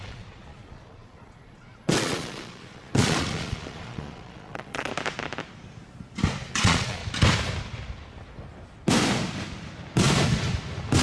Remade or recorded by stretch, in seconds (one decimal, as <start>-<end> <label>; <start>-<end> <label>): 0.0-4.9 remade; 4.9-6.5 recorded; 6.5-7.0 remade; 7.0-11.0 recorded